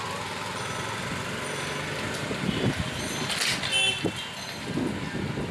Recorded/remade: recorded